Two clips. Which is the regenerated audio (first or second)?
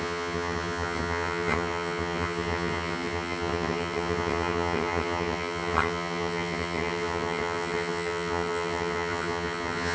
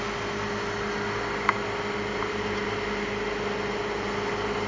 first